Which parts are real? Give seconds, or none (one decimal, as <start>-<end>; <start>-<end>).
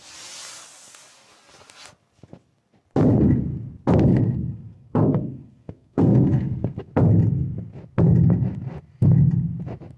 0.0-4.1; 6.9-10.0